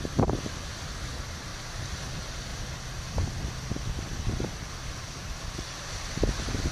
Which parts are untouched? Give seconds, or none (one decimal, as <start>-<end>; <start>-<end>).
2.5-4.0